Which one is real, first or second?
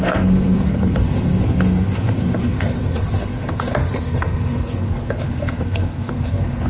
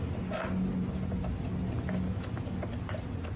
second